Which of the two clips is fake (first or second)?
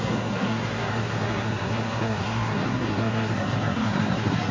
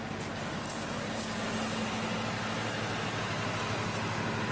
first